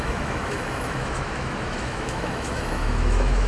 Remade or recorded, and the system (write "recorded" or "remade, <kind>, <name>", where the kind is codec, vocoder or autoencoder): remade, autoencoder, DAC-VAE